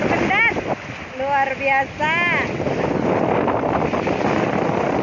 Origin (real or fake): real